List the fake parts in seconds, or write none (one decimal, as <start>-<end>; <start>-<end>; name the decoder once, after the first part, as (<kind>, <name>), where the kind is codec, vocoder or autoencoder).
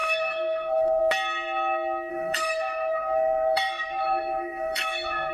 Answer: 0.0-1.0 (codec, SNAC); 2.1-5.3